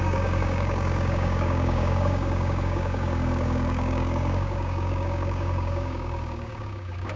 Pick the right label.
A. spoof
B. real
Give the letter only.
A